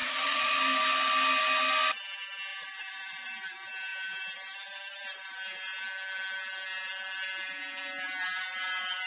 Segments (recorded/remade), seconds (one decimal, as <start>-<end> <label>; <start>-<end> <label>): 0.0-0.6 remade; 0.6-9.1 recorded